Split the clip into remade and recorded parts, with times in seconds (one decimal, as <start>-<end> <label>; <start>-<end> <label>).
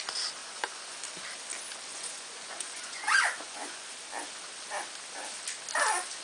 0.0-0.4 recorded; 0.4-1.0 remade; 1.0-1.9 recorded; 1.9-3.9 remade; 3.9-6.2 recorded